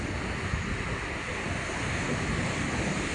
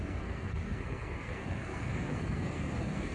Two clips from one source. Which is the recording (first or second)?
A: first